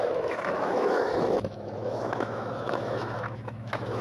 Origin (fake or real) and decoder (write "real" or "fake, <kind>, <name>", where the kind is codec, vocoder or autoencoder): fake, autoencoder, DAC-VAE